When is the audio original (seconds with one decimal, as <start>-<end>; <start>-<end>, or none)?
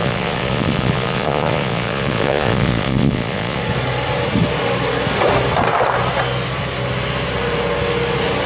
3.6-8.5